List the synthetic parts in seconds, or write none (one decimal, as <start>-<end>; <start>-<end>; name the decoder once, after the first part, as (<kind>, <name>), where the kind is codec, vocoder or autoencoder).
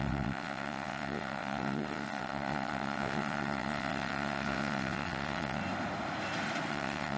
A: 0.0-5.6 (vocoder, WaveNeXt); 6.7-7.2